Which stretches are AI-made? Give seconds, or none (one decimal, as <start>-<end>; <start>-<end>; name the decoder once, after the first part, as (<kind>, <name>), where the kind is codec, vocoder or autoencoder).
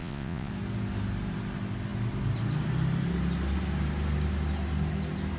0.0-0.5 (vocoder, Vocos)